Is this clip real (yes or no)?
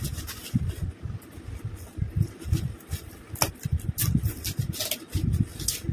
yes